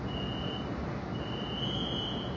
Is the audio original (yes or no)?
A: yes